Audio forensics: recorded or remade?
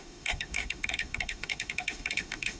remade